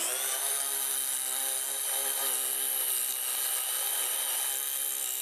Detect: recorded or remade recorded